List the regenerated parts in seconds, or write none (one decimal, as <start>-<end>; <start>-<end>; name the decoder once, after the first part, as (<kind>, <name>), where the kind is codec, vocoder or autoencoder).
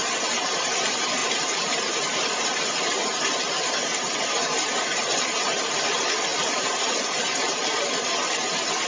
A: 1.2-3.4 (vocoder, BigVGAN v2); 6.3-7.9